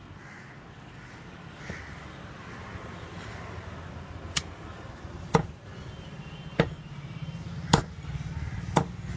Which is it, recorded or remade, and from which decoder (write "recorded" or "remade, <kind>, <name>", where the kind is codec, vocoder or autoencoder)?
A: recorded